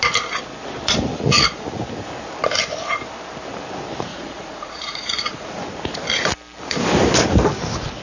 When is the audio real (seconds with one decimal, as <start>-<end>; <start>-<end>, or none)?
0.0-1.1; 1.8-4.1; 5.6-8.0